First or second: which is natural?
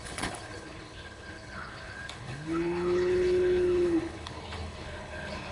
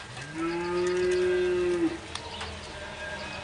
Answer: second